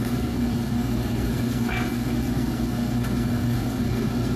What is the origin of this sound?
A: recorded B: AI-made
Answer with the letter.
B